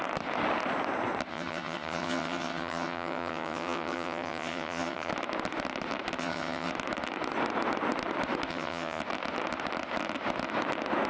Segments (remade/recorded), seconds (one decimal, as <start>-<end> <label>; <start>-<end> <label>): 0.0-1.3 recorded; 1.3-5.1 remade; 5.1-6.2 recorded; 6.2-6.7 remade; 6.7-8.5 recorded; 8.5-9.0 remade; 9.0-11.1 recorded